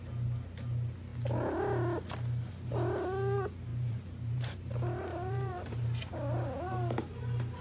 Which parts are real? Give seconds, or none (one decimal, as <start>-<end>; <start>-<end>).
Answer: 0.0-3.7; 4.6-5.1; 6.1-7.6